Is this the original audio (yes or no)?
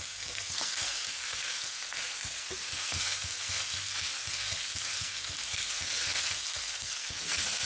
no